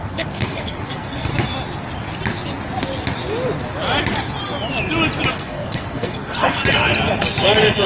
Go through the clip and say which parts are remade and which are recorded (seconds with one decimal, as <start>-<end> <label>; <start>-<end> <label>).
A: 0.0-1.3 remade; 1.3-5.3 recorded; 5.3-6.6 remade; 6.6-7.9 recorded